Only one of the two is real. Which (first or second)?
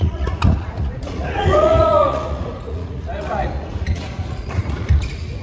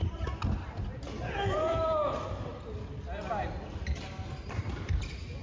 second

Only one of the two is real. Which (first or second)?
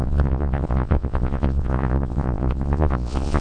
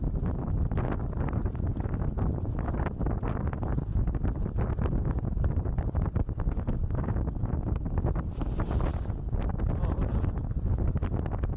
second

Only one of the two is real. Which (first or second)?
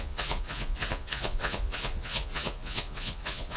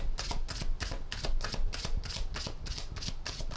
second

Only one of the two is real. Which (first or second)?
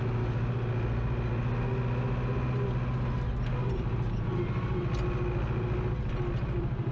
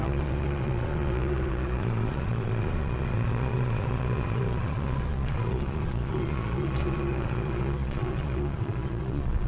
first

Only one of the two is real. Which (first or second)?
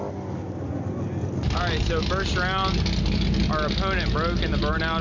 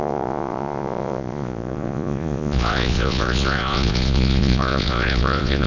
first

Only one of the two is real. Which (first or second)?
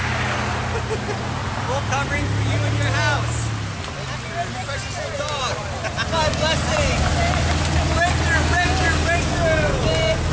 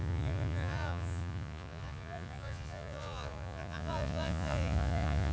first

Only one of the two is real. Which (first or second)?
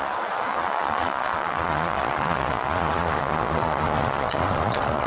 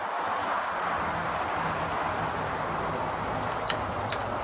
second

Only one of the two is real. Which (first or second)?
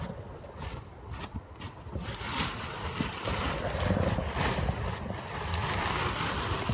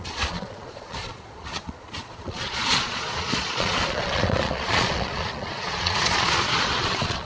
first